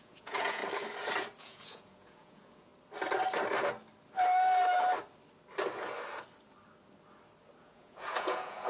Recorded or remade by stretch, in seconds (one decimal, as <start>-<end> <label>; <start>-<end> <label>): 0.0-0.6 remade; 0.6-1.4 recorded; 1.4-2.7 remade; 2.7-7.6 recorded; 7.6-8.7 remade